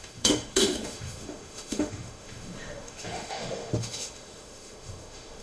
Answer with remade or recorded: remade